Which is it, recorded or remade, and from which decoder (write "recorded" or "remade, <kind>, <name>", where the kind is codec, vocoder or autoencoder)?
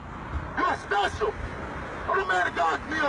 recorded